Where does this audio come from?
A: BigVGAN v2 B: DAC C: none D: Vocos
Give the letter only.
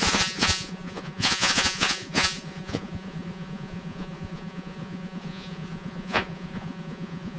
D